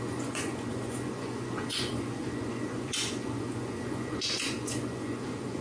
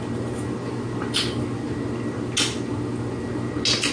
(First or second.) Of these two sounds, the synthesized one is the first